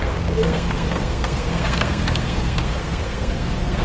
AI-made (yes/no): yes